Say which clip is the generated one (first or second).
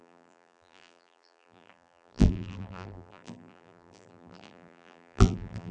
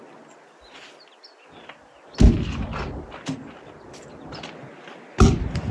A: first